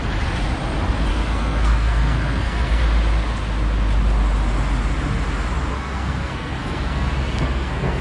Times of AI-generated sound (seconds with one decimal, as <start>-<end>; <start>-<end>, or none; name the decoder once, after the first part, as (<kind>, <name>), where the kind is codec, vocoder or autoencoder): 1.1-2.8 (codec, SNAC); 5.7-8.0